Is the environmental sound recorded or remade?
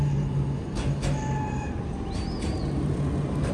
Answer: recorded